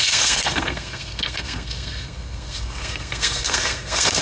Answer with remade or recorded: remade